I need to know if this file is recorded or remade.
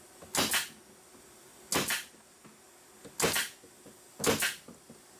recorded